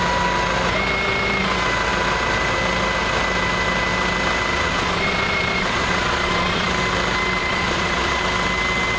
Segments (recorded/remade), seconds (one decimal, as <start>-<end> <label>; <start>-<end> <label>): 0.0-4.5 recorded; 4.5-6.7 remade; 6.7-7.4 recorded; 7.4-8.2 remade; 8.2-9.0 recorded